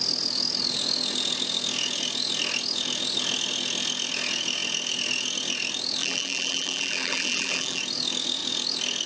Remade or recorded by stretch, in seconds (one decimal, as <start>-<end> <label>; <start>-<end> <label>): 0.0-6.0 recorded; 6.0-7.8 remade; 7.8-9.1 recorded